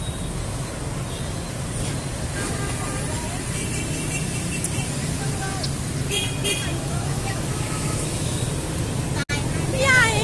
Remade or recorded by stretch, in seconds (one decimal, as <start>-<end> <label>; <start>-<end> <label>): 0.0-6.7 recorded; 6.7-8.4 remade; 8.4-10.2 recorded

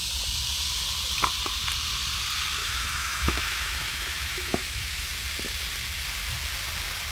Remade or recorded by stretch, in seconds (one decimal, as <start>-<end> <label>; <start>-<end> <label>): 0.0-2.6 recorded; 2.6-5.1 remade; 5.1-7.1 recorded

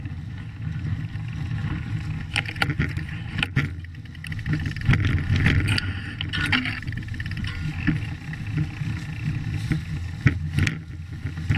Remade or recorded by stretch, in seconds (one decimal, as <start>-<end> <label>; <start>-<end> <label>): 0.0-11.6 recorded

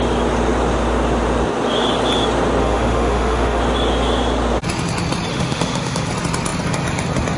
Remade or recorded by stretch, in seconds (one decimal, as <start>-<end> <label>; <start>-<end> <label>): 0.0-2.6 recorded; 2.6-3.6 remade; 3.6-5.3 recorded; 5.3-6.1 remade; 6.1-7.4 recorded

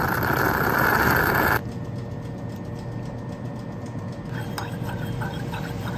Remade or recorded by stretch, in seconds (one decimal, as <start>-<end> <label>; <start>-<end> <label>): 0.0-6.0 recorded

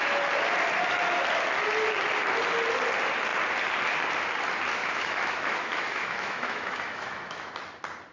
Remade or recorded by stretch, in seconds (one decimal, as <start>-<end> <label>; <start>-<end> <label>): 0.0-4.8 recorded; 4.8-7.5 remade; 7.5-8.1 recorded

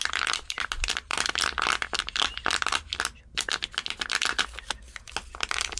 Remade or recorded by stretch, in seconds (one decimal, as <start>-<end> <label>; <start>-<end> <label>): 0.0-5.8 recorded

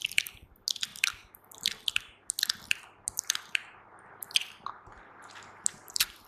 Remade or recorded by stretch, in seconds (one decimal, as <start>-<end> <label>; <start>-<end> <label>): 0.0-6.3 recorded